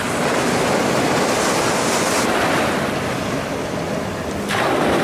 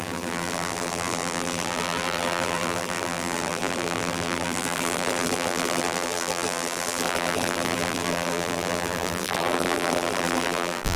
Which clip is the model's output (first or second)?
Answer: second